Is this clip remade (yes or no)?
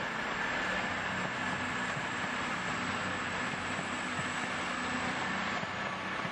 no